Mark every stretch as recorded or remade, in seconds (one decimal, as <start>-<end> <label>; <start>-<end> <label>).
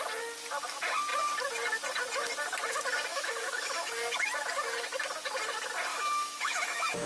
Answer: 0.0-3.1 recorded; 3.1-3.9 remade; 3.9-5.9 recorded; 5.9-7.1 remade